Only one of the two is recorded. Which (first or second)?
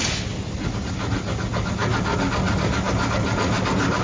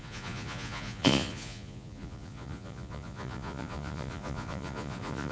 first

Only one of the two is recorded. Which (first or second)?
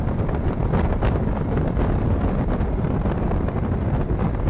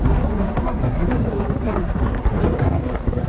first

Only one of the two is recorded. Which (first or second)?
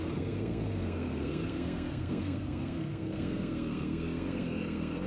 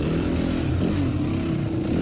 second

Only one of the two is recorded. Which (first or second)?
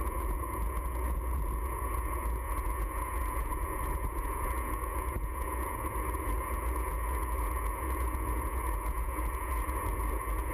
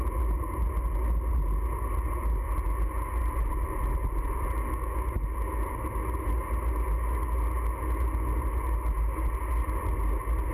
second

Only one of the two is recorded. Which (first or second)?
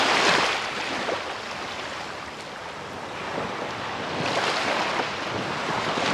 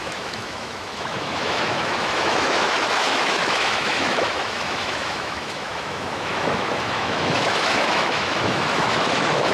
first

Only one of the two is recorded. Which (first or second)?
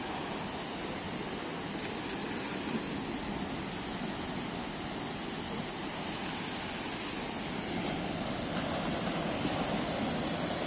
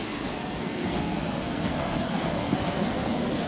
first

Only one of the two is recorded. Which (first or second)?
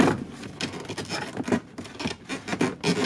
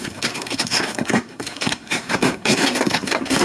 first